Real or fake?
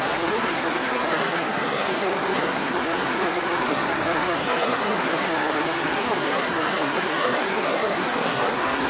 fake